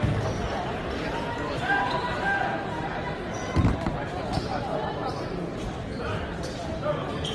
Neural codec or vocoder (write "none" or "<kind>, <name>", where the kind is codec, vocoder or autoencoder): vocoder, BigVGAN v2